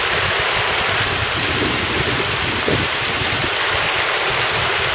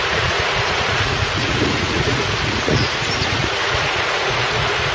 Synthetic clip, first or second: second